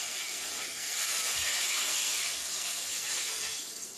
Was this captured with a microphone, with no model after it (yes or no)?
no